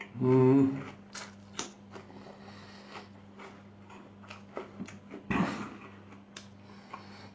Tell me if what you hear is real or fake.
real